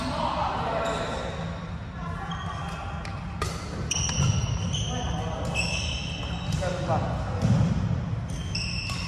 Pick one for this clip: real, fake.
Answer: real